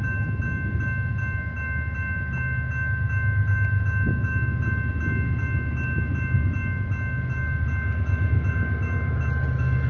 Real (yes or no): yes